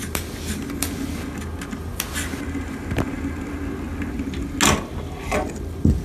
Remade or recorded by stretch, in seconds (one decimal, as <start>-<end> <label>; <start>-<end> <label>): 0.0-6.0 recorded